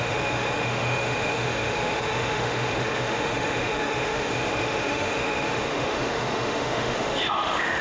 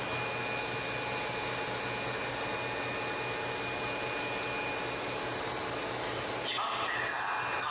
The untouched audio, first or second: second